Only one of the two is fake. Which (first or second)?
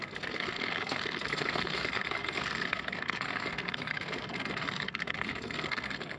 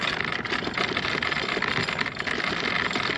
first